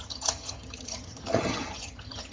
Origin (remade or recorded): remade